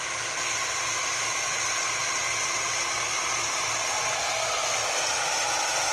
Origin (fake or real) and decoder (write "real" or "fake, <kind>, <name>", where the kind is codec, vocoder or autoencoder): real